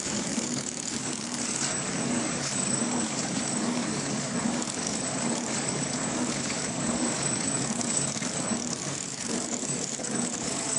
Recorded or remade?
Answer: remade